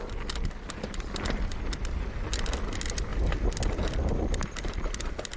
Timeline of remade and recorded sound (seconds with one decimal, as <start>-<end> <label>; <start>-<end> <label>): 0.0-5.4 recorded